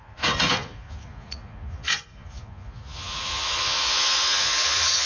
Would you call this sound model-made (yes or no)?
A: yes